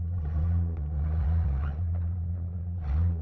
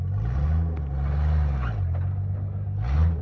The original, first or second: second